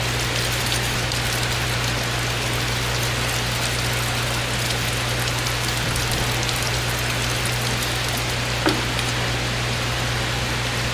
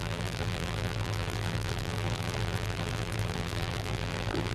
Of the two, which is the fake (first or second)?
second